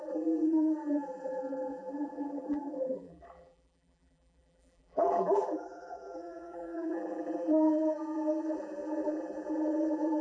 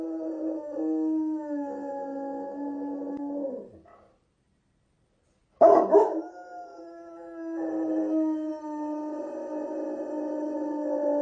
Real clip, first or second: second